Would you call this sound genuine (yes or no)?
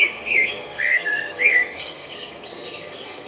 no